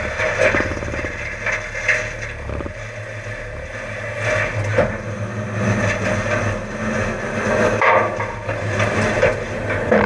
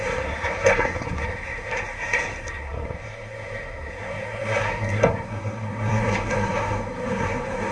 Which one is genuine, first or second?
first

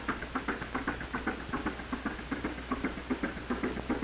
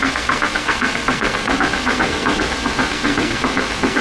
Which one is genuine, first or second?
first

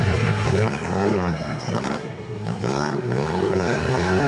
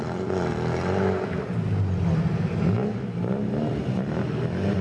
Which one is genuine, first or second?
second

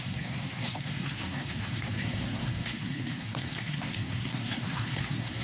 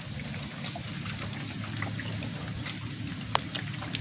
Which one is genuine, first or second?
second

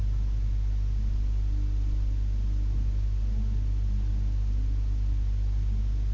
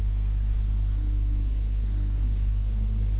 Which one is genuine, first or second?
first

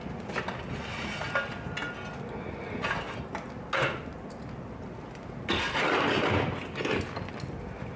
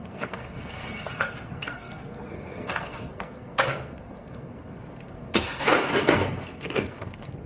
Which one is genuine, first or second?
first